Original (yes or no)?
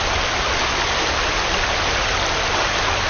yes